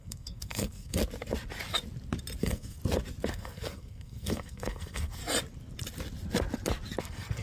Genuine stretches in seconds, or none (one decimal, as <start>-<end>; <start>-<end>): 1.0-2.4; 2.8-3.3; 5.2-7.0